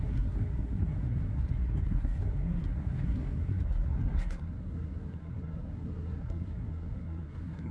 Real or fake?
fake